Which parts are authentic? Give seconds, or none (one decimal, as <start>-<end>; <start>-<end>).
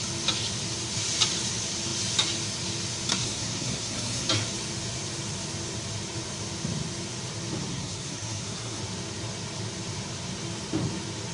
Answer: 0.0-3.1; 4.3-7.7; 8.8-11.3